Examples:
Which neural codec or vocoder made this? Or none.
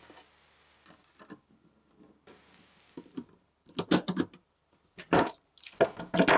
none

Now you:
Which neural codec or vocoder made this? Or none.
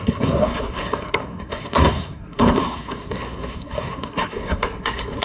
codec, SNAC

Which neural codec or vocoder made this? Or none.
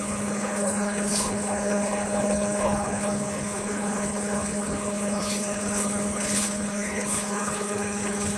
codec, HILCodec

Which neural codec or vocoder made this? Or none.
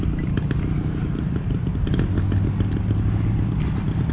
none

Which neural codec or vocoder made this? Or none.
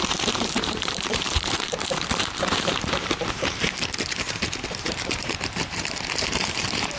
vocoder, BigVGAN v2